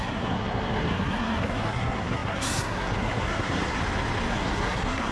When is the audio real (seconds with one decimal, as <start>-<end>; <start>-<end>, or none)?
3.8-4.3